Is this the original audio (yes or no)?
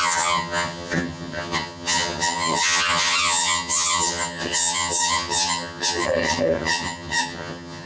no